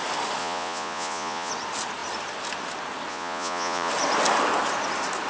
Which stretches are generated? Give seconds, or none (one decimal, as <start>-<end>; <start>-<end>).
0.4-1.5; 3.1-3.9